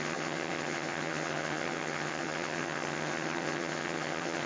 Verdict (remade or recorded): remade